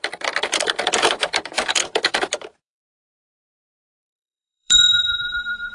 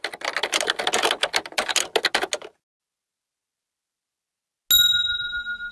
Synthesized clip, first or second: first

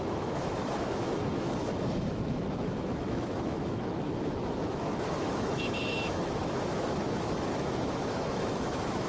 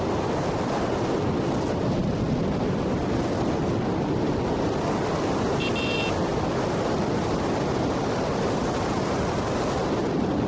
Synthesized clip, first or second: first